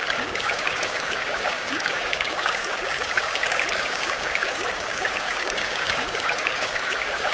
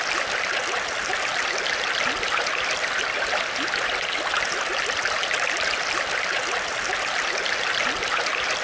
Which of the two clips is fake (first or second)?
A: first